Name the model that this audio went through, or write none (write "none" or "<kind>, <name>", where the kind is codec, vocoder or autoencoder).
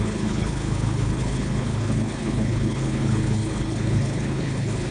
codec, HILCodec